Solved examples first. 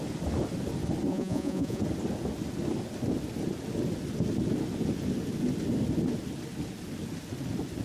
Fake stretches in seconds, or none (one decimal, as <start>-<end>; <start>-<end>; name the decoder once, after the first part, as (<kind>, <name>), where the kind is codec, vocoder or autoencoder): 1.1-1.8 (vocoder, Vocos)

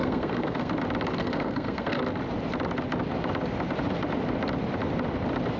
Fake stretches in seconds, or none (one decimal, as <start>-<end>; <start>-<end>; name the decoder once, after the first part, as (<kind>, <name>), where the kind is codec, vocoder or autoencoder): 0.0-0.7 (codec, SNAC); 1.2-2.0

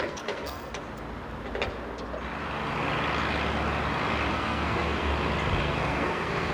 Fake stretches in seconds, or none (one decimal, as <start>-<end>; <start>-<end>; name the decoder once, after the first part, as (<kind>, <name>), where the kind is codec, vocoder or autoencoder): 0.0-0.8 (codec, SNAC); 4.3-5.1; 5.6-6.5

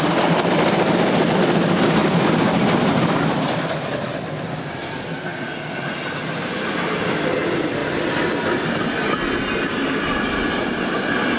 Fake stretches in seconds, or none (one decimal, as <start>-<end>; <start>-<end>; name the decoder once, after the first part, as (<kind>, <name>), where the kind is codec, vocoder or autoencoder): none

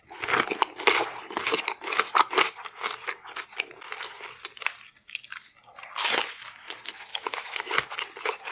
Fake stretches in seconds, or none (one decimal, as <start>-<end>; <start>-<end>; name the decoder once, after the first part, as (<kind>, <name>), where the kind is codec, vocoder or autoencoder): 7.1-7.7 (autoencoder, DAC-VAE)

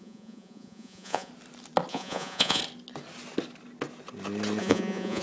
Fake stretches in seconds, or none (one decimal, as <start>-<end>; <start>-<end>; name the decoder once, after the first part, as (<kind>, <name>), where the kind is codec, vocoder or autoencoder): 0.0-1.3 (vocoder, Vocos); 1.9-2.6; 4.6-5.2

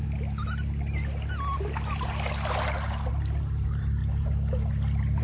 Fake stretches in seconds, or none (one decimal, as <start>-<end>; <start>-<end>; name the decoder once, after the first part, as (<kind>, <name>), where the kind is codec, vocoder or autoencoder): none